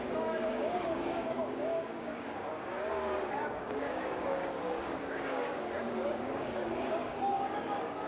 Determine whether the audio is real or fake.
fake